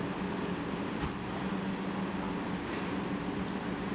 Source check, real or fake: real